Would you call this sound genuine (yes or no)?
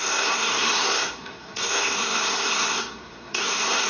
no